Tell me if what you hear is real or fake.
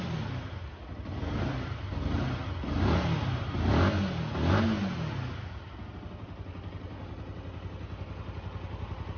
real